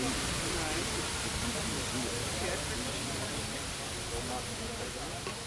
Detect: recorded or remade recorded